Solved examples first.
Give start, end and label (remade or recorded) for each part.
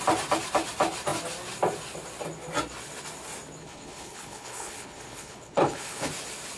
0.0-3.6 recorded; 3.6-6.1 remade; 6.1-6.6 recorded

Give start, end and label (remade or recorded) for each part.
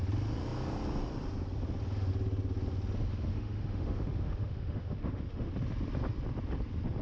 0.0-3.3 recorded; 3.3-5.5 remade; 5.5-7.0 recorded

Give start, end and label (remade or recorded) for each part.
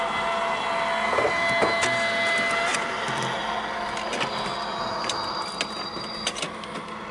0.0-7.1 recorded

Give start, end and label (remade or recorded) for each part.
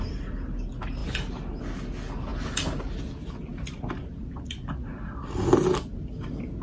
0.0-6.6 recorded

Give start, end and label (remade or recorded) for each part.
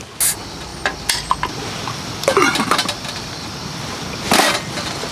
0.0-5.1 recorded